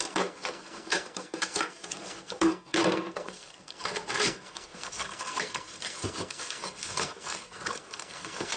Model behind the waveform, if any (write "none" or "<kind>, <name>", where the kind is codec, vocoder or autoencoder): codec, SNAC